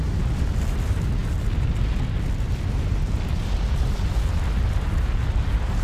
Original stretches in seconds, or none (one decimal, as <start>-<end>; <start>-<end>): 0.0-5.8